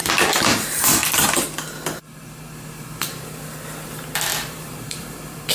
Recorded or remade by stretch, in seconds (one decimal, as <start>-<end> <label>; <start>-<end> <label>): 0.0-4.3 recorded; 4.3-5.5 remade